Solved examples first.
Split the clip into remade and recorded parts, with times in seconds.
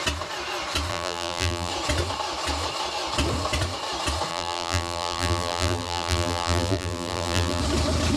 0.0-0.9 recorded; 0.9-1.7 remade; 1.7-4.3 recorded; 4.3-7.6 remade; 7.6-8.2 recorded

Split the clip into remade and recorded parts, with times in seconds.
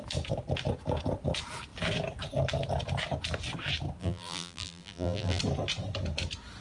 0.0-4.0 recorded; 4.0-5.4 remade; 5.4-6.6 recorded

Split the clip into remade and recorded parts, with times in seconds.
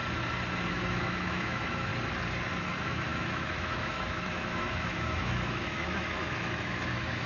0.0-0.7 recorded; 0.7-1.9 remade; 1.9-2.6 recorded; 2.6-7.3 remade